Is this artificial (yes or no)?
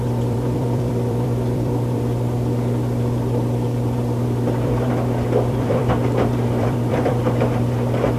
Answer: yes